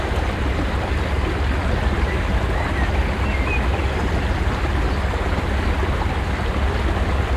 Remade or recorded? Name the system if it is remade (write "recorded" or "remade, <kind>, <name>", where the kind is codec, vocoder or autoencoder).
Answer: recorded